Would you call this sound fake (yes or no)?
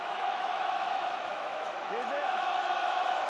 yes